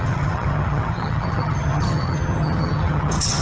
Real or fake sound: fake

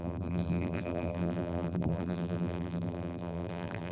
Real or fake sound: fake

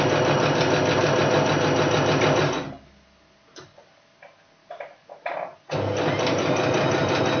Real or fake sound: real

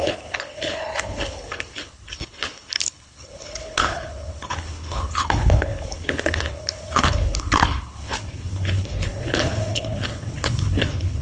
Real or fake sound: fake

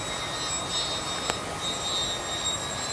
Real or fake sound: real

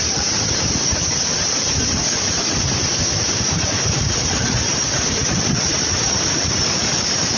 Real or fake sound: fake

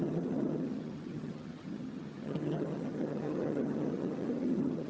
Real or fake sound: fake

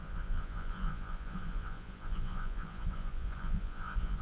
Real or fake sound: fake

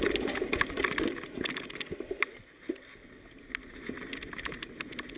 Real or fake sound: real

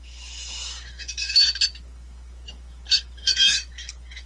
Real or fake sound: fake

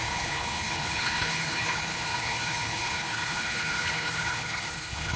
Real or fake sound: fake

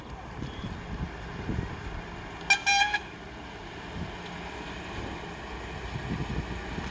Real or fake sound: real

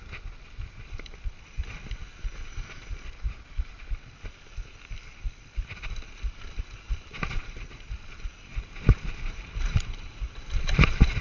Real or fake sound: real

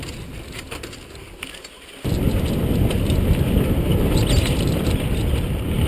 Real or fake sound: real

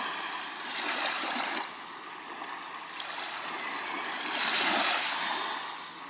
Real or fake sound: real